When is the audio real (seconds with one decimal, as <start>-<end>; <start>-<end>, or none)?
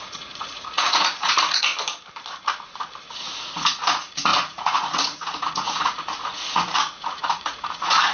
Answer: 1.7-3.1